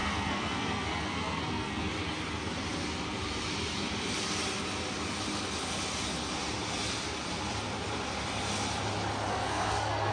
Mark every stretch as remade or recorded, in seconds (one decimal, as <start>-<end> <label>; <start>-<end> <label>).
0.0-1.9 remade; 1.9-9.3 recorded; 9.3-10.1 remade